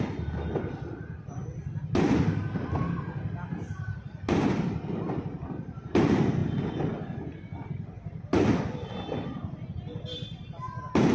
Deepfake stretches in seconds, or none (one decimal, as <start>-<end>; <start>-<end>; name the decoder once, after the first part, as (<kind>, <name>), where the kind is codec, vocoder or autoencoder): none